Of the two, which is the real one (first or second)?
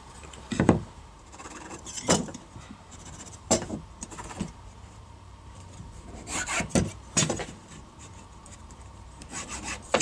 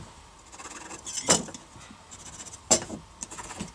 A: second